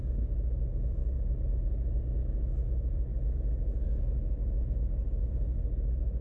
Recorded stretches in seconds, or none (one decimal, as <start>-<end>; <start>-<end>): 1.0-2.1; 4.4-6.2